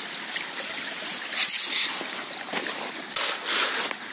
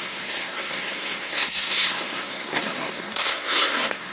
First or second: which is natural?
first